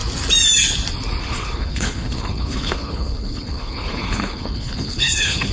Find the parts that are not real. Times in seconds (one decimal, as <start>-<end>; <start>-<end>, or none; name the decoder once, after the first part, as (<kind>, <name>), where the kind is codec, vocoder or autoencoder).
1.2-5.5 (codec, HILCodec)